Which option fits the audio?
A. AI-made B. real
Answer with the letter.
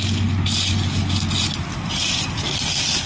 B